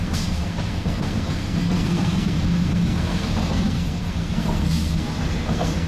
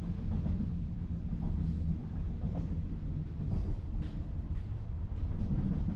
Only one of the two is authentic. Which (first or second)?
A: second